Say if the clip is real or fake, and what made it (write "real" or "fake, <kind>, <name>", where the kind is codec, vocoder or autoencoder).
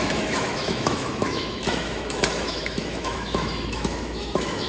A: fake, autoencoder, DAC-VAE